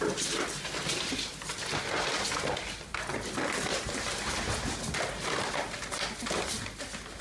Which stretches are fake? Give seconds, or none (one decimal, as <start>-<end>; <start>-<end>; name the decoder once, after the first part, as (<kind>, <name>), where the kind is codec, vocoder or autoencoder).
none